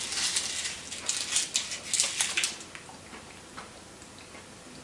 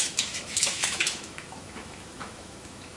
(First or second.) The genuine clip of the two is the first